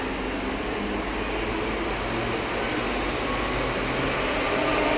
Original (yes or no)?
yes